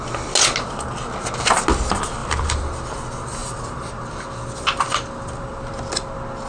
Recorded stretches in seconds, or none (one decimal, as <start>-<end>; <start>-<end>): 0.0-2.2; 2.9-3.4; 5.9-6.5